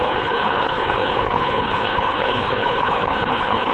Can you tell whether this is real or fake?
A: fake